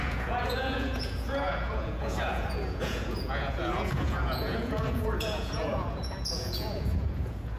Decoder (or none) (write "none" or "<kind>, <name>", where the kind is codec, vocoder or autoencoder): vocoder, Vocos